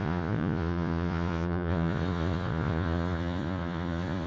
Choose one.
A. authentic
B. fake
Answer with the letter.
B